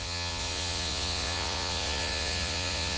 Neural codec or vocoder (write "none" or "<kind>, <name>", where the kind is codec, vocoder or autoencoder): vocoder, Vocos